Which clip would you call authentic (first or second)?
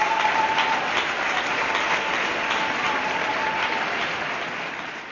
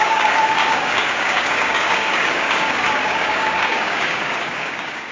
first